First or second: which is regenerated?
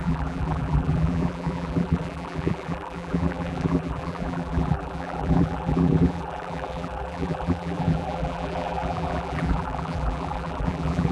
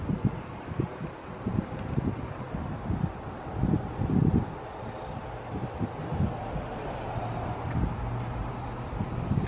first